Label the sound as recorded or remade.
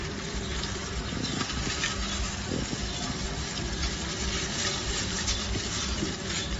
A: recorded